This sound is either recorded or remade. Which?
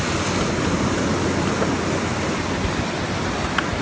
recorded